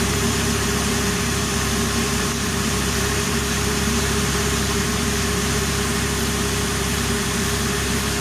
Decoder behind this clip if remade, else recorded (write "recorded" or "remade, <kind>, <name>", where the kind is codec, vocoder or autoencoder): remade, vocoder, BigVGAN v2